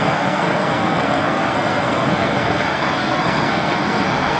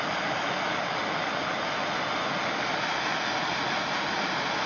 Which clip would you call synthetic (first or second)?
first